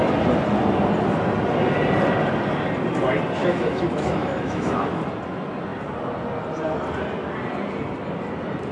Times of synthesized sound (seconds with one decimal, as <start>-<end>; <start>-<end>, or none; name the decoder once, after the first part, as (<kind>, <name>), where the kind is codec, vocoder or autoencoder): 3.4-5.0 (autoencoder, DAC-VAE)

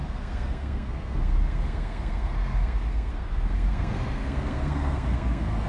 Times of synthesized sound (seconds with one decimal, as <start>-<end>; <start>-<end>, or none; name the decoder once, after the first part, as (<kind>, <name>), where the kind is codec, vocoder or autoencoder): 0.0-5.7 (codec, SNAC)

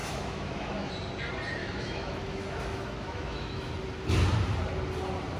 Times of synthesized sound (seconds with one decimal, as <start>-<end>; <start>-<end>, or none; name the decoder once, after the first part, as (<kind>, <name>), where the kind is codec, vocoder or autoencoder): 0.0-0.9 (autoencoder, DAC-VAE); 1.6-3.7

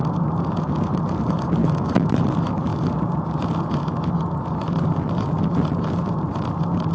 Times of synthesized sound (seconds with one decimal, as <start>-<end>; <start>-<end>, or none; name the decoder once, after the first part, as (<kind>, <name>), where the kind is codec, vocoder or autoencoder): 1.6-2.3 (autoencoder, DAC-VAE)